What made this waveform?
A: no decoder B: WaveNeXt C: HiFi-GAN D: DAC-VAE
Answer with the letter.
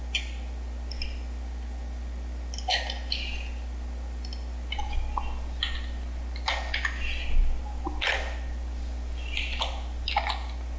A